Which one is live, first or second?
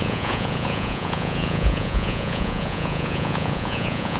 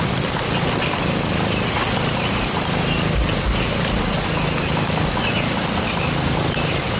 second